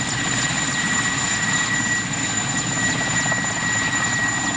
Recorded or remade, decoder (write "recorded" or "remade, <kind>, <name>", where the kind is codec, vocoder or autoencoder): recorded